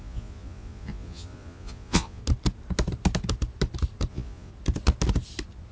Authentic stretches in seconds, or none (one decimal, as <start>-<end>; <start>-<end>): 2.2-4.1; 4.5-5.7